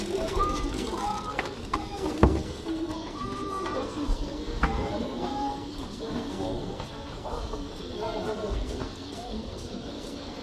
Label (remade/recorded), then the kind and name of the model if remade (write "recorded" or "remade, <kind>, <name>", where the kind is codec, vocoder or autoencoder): remade, codec, SNAC